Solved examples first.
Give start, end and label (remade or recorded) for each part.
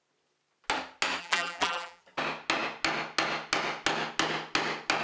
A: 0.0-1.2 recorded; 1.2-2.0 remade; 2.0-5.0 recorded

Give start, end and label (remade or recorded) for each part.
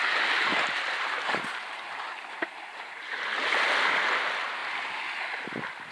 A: 0.0-0.5 recorded; 0.5-3.2 remade; 3.2-4.6 recorded; 4.6-5.2 remade; 5.2-5.9 recorded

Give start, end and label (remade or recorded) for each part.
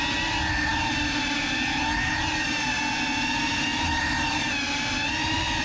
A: 0.0-3.7 recorded; 3.7-4.5 remade; 4.5-5.6 recorded